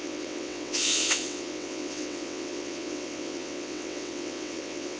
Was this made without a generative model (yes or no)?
no